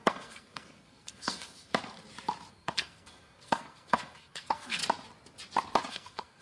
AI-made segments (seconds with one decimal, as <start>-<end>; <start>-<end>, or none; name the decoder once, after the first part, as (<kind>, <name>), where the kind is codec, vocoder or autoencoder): 0.0-1.7 (codec, SNAC); 2.5-4.8; 5.9-6.4